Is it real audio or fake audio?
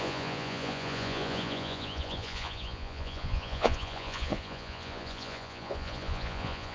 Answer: fake